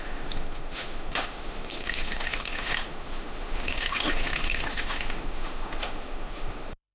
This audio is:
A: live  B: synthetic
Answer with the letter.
B